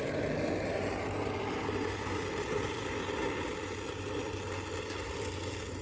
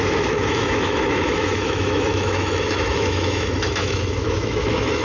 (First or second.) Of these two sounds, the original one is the first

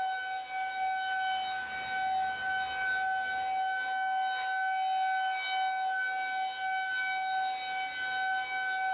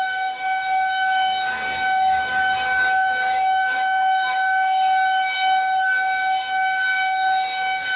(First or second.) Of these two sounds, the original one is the first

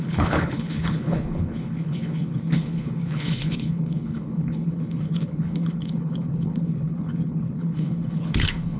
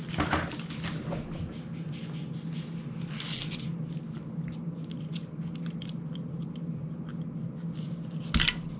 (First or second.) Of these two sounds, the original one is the second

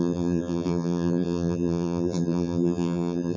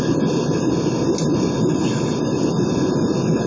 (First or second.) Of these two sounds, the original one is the second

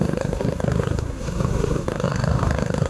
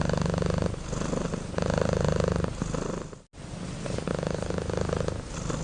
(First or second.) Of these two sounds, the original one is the second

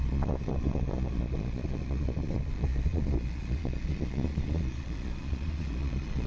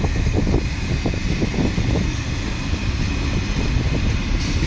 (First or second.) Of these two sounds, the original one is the second